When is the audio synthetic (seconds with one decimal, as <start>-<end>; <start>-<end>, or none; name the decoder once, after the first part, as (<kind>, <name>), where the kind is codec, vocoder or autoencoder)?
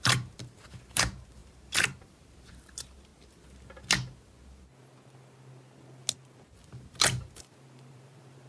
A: 0.0-3.1 (vocoder, BigVGAN v2); 7.3-8.5